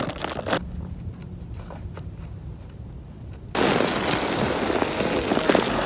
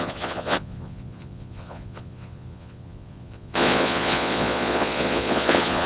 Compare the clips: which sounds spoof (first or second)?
second